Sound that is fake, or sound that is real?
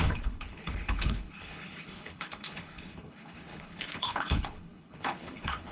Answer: fake